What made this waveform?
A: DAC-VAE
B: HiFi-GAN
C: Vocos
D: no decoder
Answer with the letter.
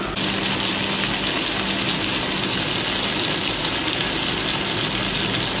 D